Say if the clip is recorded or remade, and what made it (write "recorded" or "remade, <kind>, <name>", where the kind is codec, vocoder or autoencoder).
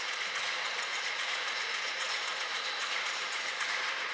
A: remade, vocoder, Vocos